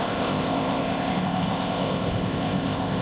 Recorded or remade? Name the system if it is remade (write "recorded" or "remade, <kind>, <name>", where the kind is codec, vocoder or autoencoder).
remade, codec, ZipCodec